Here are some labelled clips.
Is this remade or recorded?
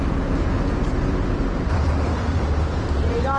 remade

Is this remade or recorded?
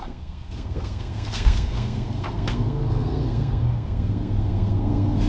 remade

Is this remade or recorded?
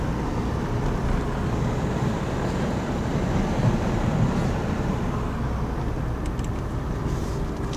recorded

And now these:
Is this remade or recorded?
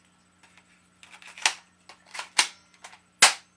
recorded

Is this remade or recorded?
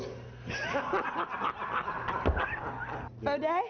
recorded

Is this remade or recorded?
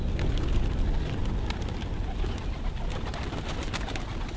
recorded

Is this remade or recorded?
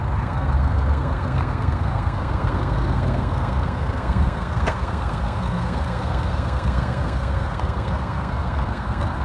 remade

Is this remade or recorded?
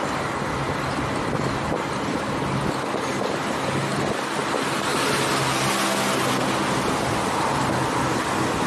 recorded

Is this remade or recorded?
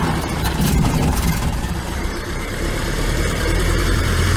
remade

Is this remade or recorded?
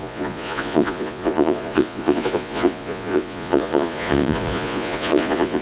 remade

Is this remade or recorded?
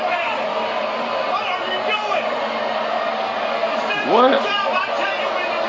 recorded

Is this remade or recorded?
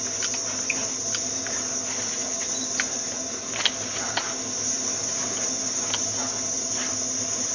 recorded